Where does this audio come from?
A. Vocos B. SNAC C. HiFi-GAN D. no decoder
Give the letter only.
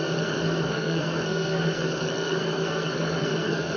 B